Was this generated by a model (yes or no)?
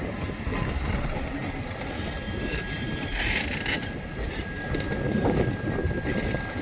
no